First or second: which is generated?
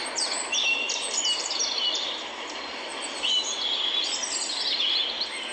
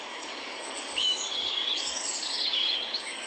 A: second